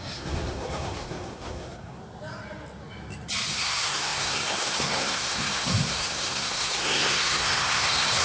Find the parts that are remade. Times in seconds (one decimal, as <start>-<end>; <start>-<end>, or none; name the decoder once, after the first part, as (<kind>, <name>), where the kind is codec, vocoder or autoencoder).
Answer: 0.0-2.0 (codec, SNAC); 3.5-8.2